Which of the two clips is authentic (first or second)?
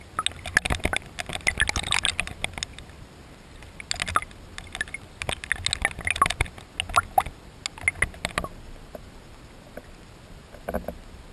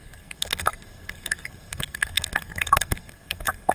first